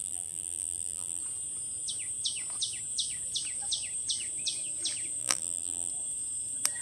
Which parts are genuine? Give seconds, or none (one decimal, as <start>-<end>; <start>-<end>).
1.2-5.2; 5.9-6.8